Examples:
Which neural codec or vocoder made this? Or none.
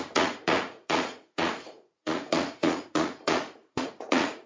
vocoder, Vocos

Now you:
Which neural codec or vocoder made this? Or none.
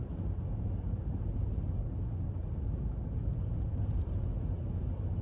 none